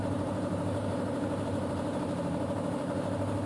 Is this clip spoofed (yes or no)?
yes